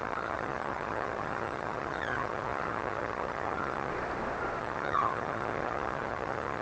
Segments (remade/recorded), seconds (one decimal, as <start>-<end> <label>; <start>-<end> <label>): 0.0-3.9 remade; 3.9-4.6 recorded; 4.6-6.6 remade